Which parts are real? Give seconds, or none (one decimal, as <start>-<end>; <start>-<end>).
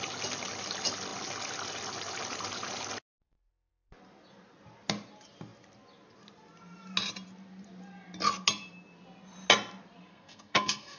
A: 0.0-10.1